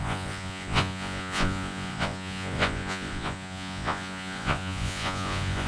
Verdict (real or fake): fake